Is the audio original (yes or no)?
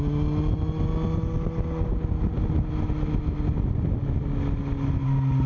yes